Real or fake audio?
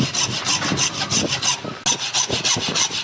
real